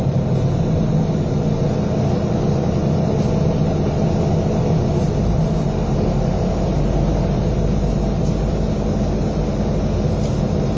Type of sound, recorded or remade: recorded